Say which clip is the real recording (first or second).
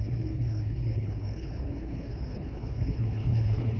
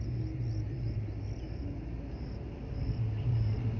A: second